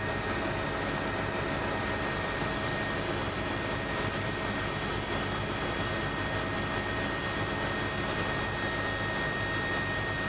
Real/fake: real